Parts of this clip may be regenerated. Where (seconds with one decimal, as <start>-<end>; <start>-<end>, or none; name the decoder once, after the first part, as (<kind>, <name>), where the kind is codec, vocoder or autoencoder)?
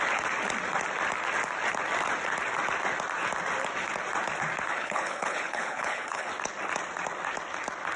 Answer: 4.7-6.3 (codec, HILCodec)